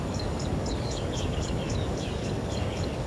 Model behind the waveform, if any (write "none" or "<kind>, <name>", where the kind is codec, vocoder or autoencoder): codec, DAC